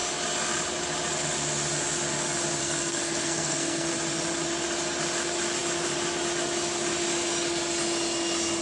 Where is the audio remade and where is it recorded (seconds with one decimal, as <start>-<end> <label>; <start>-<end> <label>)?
0.0-2.6 recorded; 2.6-3.9 remade; 3.9-8.6 recorded